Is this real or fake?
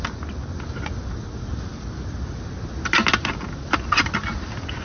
real